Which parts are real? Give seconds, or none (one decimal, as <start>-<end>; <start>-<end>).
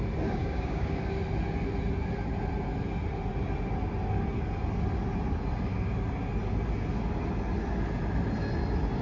0.0-0.4; 1.0-9.0